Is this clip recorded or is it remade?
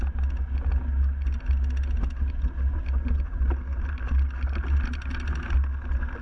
recorded